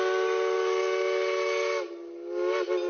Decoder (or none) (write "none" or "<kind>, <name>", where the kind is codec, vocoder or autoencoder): none